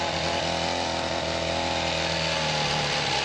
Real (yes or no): yes